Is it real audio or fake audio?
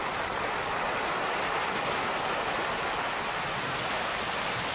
real